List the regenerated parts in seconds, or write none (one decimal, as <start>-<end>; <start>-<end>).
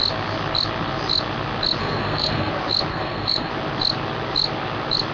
1.8-2.5; 2.9-3.5